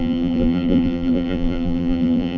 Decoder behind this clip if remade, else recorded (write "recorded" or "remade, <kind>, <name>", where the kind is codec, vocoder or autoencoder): remade, vocoder, BigVGAN v2